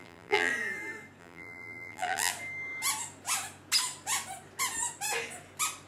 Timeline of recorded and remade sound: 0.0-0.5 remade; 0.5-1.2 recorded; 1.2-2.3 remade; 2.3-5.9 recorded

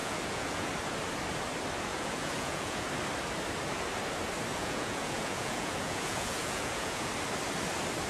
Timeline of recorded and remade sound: 0.0-0.7 remade; 0.7-1.9 recorded; 1.9-2.9 remade; 2.9-4.5 recorded; 4.5-7.1 remade; 7.1-8.1 recorded

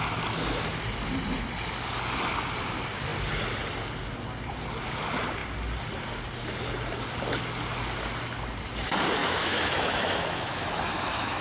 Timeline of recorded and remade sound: 0.0-9.2 recorded; 9.2-11.4 remade

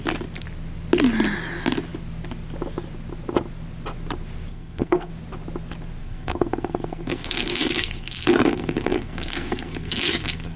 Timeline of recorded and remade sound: 0.0-4.5 recorded; 4.5-5.1 remade; 5.1-6.0 recorded; 6.0-10.6 remade

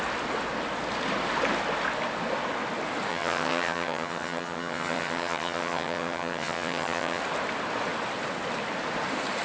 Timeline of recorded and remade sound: 0.0-3.1 recorded; 3.1-7.2 remade; 7.2-9.4 recorded

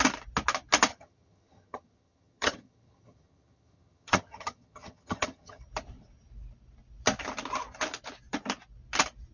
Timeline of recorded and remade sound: 0.0-0.9 recorded; 0.9-5.6 remade; 5.6-9.3 recorded

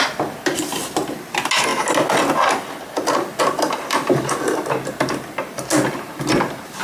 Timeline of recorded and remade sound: 0.0-6.8 recorded

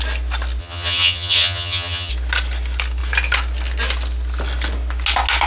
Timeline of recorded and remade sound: 0.0-0.6 recorded; 0.6-2.1 remade; 2.1-5.5 recorded